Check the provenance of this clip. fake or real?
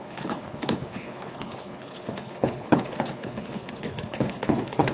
fake